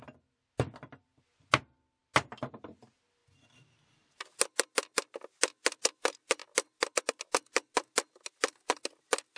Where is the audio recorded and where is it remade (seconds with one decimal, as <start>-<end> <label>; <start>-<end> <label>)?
0.0-9.4 recorded